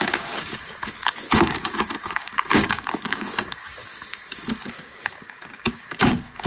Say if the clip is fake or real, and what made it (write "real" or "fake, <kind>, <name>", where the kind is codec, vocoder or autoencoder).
fake, codec, DAC